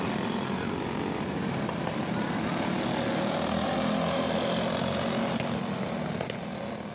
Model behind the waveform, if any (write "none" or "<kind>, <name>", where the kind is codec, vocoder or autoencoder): none